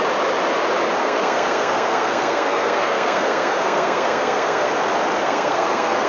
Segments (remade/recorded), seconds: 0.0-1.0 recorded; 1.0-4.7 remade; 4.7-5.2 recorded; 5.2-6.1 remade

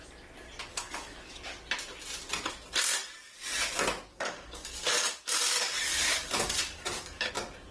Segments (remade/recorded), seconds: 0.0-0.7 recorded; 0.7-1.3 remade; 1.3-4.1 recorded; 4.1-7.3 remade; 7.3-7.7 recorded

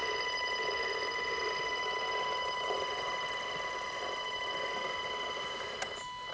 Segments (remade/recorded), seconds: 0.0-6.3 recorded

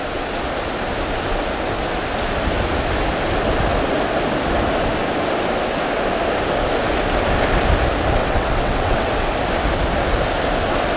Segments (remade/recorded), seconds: 0.0-8.2 recorded; 8.2-9.1 remade; 9.1-11.0 recorded

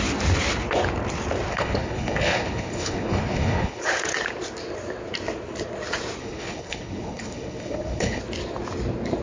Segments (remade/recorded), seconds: 0.0-1.5 recorded; 1.5-3.8 remade; 3.8-6.2 recorded; 6.2-8.2 remade; 8.2-9.2 recorded

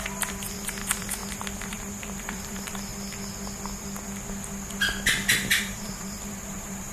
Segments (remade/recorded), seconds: 0.0-1.2 remade; 1.2-1.7 recorded; 1.7-2.9 remade; 2.9-5.6 recorded; 5.6-6.9 remade

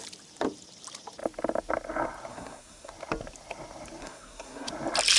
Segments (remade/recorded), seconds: 0.0-2.3 recorded; 2.3-2.9 remade; 2.9-4.0 recorded; 4.0-4.7 remade; 4.7-5.2 recorded

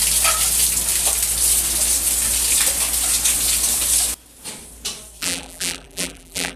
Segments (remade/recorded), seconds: 0.0-5.2 recorded; 5.2-6.6 remade